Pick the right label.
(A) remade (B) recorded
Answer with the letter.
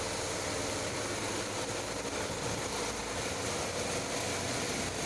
B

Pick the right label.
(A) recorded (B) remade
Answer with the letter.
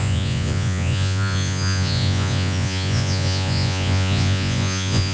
B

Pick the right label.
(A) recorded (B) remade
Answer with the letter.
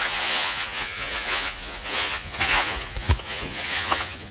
B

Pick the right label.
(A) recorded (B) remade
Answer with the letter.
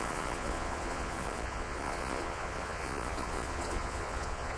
B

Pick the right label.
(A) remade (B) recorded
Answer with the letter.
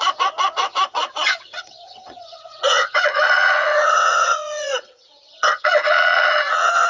A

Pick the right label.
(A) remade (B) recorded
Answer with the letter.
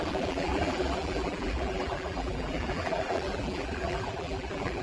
A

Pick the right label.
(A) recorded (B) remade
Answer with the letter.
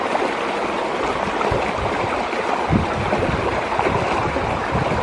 A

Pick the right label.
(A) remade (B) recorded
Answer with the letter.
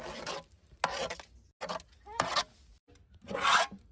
B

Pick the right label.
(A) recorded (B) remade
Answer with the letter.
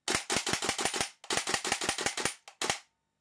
A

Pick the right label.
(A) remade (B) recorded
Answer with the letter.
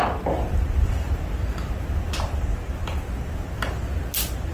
B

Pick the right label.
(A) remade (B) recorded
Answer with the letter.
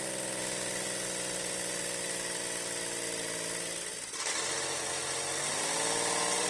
B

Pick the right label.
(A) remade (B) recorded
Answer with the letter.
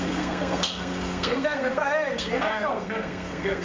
A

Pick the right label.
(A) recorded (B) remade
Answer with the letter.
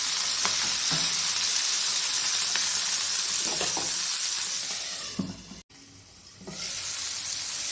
A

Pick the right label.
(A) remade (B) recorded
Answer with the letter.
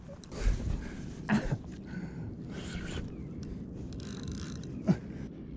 B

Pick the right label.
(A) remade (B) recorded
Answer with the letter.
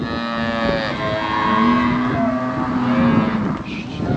B